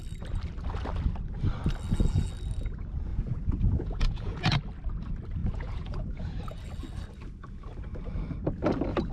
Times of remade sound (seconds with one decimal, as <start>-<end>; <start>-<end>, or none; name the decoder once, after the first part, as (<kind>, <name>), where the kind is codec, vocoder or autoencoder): 3.1-4.6 (vocoder, Vocos); 5.4-6.4